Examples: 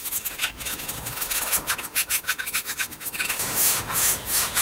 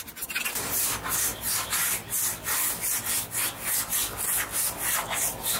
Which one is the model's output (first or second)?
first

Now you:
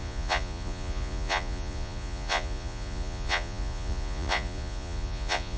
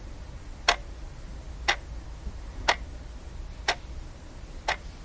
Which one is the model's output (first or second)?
first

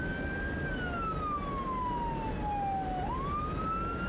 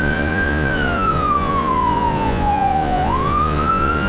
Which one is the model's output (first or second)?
second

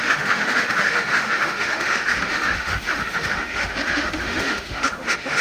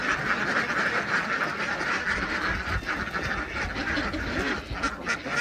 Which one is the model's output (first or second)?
first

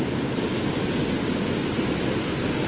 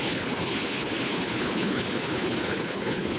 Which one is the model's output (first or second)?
second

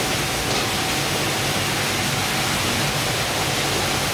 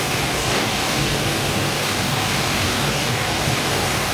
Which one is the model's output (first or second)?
second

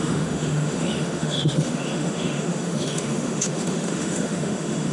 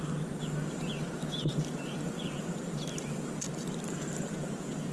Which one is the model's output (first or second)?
first